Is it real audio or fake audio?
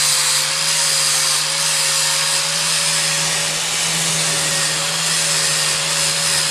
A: real